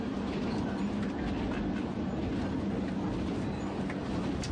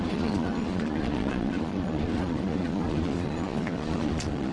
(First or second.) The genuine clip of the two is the first